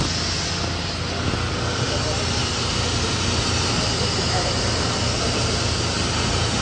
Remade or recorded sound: recorded